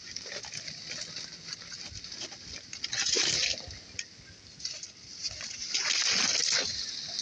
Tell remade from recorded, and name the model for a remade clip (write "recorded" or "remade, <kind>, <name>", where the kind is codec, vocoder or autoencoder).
recorded